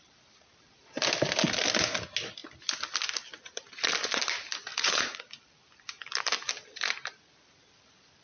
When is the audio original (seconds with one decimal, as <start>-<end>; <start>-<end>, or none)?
0.0-4.7; 5.2-8.2